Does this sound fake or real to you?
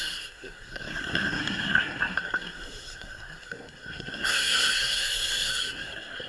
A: fake